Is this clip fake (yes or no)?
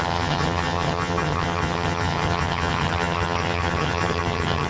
yes